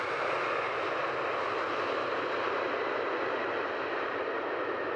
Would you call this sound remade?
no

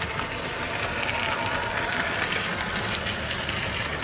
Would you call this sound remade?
no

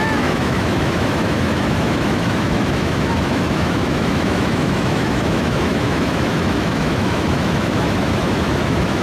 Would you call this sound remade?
yes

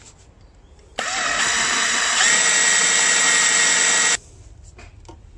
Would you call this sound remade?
no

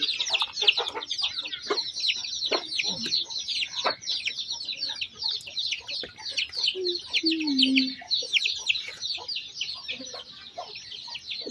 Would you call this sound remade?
no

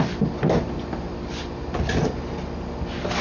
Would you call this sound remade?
no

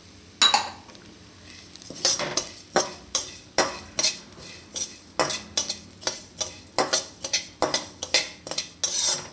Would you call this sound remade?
no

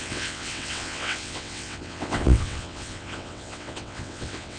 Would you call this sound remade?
yes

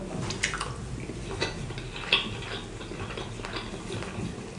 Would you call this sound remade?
no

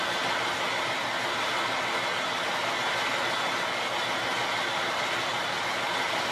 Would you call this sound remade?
no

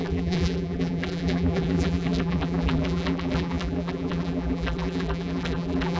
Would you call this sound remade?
yes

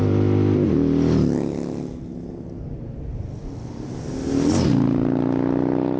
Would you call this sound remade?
no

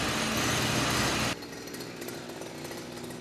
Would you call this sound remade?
no